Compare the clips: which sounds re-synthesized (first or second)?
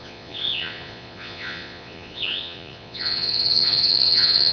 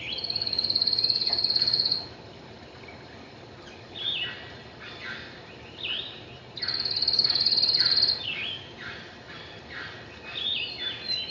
first